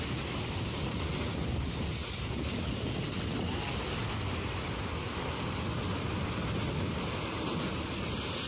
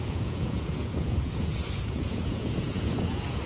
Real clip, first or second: first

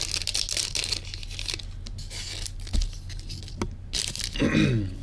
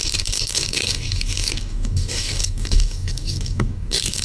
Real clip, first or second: first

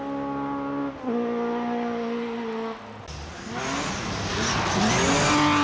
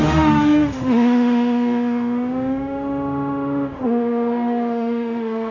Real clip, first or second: first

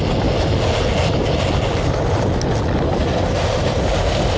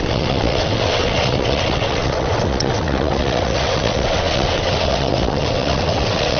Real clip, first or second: first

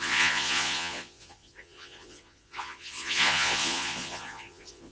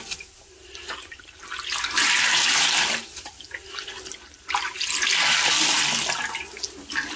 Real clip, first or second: second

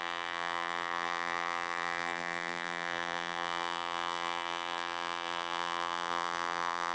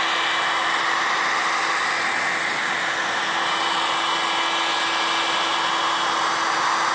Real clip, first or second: second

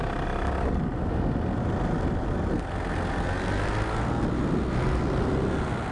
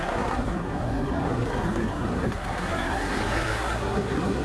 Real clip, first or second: first